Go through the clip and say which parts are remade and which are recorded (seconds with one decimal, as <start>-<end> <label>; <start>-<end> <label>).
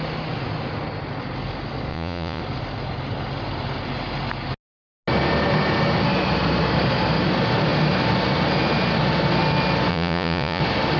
0.0-1.9 recorded; 1.9-2.4 remade; 2.4-9.9 recorded; 9.9-10.6 remade; 10.6-11.0 recorded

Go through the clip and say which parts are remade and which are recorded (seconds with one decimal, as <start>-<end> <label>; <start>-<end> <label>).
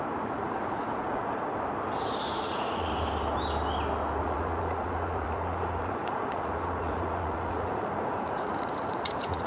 0.0-1.4 remade; 1.4-2.2 recorded; 2.2-2.9 remade; 2.9-4.2 recorded; 4.2-9.5 remade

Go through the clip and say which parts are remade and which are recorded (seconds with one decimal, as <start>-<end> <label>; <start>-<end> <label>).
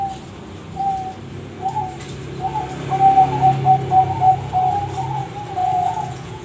0.0-5.6 recorded; 5.6-6.4 remade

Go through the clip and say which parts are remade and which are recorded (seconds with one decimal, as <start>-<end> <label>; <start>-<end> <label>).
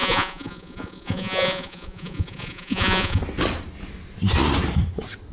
0.0-3.2 remade; 3.2-5.3 recorded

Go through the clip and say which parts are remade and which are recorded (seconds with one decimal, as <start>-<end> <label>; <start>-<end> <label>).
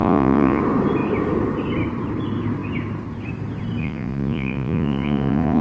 0.0-0.6 remade; 0.6-3.8 recorded; 3.8-5.6 remade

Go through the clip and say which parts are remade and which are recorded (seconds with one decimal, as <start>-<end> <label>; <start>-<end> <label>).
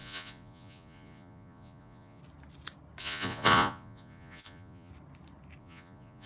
0.0-2.2 remade; 2.2-3.0 recorded; 3.0-4.9 remade; 4.9-5.6 recorded; 5.6-6.3 remade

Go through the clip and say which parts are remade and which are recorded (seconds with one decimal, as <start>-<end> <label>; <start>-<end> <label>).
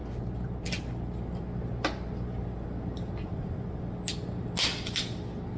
0.0-3.2 recorded; 3.2-3.8 remade; 3.8-5.6 recorded